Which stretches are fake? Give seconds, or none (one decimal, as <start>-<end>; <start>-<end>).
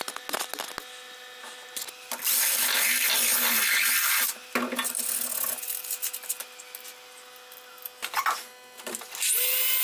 none